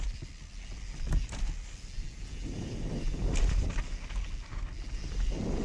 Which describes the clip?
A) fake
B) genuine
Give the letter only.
B